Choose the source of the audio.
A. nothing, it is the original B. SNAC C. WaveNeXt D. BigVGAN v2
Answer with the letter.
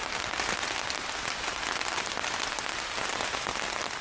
A